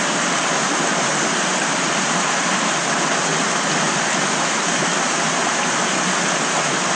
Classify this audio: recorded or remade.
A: recorded